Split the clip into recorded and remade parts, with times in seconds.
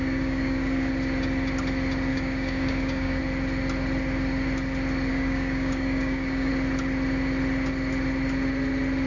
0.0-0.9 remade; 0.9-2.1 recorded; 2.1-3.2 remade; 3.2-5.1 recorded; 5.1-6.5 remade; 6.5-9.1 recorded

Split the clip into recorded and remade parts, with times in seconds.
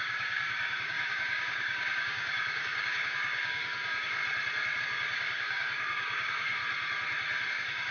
0.0-4.2 remade; 4.2-4.8 recorded; 4.8-6.6 remade; 6.6-7.5 recorded; 7.5-7.9 remade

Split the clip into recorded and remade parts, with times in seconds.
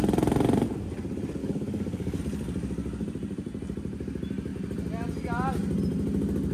0.0-1.4 recorded; 1.4-2.2 remade; 2.2-6.5 recorded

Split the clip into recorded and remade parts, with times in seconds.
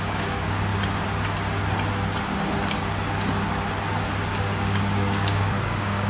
0.0-0.7 remade; 0.7-4.4 recorded; 4.4-6.1 remade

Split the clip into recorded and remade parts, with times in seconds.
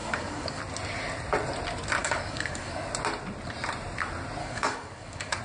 0.0-0.6 remade; 0.6-2.0 recorded; 2.0-2.9 remade; 2.9-4.4 recorded; 4.4-5.4 remade